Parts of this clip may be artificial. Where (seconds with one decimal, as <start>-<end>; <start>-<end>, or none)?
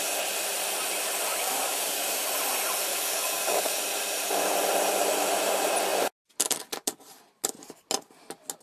1.3-2.2; 2.9-3.8